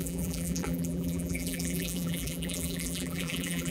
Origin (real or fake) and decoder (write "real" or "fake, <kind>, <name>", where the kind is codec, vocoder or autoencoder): fake, vocoder, BigVGAN v2